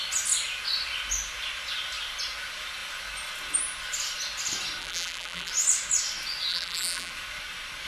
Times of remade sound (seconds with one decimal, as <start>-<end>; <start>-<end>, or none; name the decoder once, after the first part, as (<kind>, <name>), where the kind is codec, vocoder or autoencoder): 4.8-5.5 (vocoder, BigVGAN v2); 6.5-7.1